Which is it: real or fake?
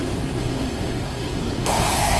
fake